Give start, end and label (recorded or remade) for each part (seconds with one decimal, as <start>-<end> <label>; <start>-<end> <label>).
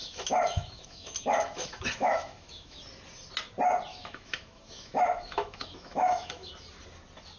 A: 0.0-2.8 remade; 2.8-3.9 recorded; 3.9-6.5 remade; 6.5-7.4 recorded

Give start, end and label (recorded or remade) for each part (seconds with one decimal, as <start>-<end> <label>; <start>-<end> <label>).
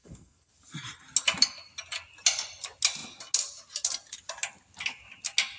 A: 0.0-0.5 remade; 0.5-5.6 recorded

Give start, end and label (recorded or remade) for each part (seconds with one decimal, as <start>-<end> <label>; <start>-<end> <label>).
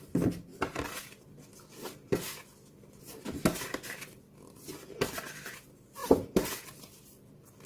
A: 0.0-7.7 recorded